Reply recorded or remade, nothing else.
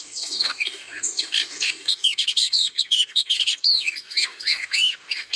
remade